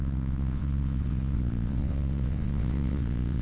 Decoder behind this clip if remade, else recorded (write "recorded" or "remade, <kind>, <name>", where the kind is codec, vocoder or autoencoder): remade, vocoder, WaveNeXt